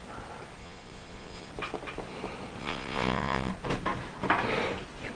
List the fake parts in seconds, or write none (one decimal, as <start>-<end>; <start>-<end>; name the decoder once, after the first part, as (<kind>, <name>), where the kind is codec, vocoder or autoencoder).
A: 0.6-1.5 (vocoder, Vocos); 2.6-3.5